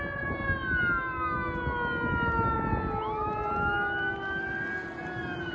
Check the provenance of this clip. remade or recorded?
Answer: recorded